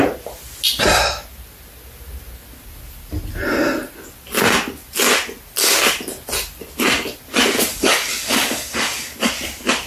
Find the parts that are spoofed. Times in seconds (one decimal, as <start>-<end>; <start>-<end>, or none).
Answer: 7.7-9.3